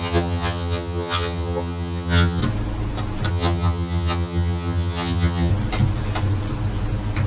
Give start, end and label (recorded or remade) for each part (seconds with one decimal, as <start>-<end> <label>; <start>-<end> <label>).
0.0-2.4 remade; 2.4-3.3 recorded; 3.3-5.5 remade; 5.5-7.3 recorded